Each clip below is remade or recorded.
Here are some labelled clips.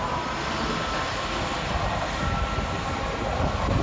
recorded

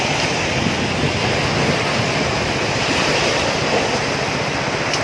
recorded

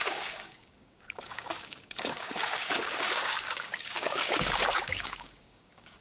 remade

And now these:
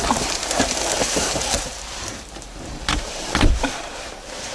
remade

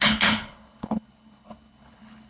remade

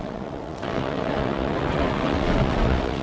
remade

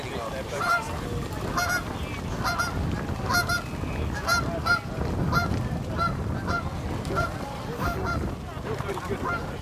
recorded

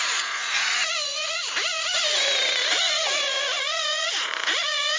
remade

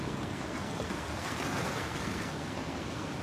remade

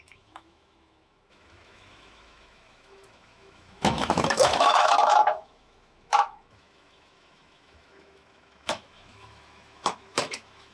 remade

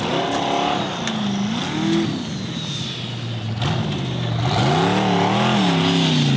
recorded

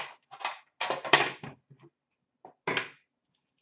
recorded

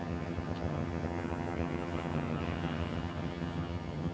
remade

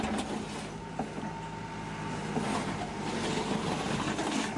recorded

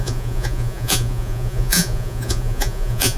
remade